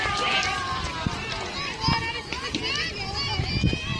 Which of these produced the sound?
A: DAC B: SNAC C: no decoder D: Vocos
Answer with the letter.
C